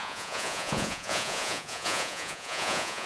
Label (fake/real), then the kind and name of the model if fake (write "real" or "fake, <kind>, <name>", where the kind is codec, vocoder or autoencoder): fake, vocoder, Vocos